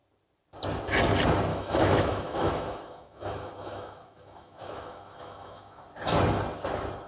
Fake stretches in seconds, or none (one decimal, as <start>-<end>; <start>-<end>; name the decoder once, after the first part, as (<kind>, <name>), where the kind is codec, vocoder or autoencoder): 1.5-5.8 (autoencoder, DAC-VAE)